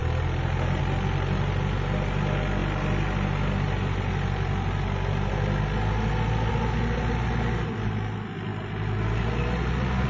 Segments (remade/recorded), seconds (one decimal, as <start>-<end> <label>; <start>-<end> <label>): 0.0-10.1 recorded